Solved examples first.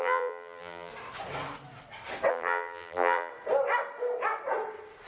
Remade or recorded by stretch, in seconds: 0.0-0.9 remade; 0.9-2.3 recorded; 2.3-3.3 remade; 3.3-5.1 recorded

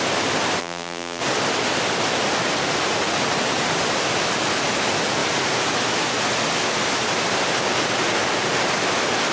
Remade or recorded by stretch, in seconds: 0.0-0.6 recorded; 0.6-1.2 remade; 1.2-9.3 recorded